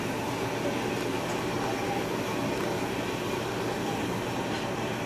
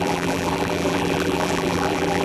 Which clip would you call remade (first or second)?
second